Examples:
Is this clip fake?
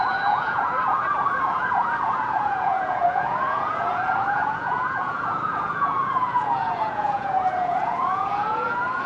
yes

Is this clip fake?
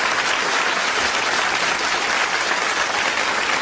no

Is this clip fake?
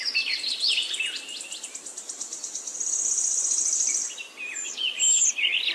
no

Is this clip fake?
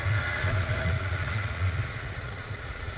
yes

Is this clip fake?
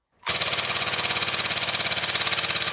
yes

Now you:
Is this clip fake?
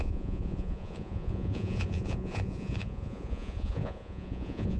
yes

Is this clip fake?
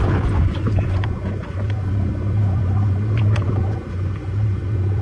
yes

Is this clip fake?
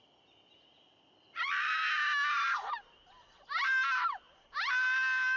no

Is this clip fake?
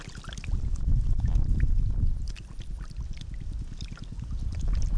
no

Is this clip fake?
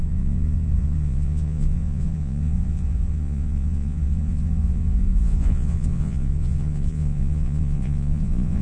yes